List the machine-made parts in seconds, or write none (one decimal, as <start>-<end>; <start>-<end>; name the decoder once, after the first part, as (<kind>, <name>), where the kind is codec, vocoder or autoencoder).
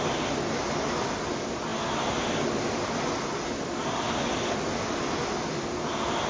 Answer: none